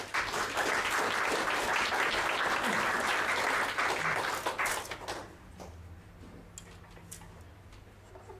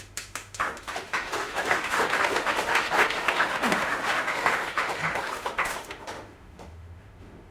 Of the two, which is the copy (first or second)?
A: second